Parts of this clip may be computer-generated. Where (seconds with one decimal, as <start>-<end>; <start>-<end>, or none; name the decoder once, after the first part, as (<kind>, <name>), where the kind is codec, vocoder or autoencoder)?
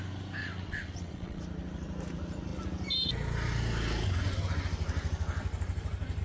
0.4-1.4 (vocoder, WaveNeXt)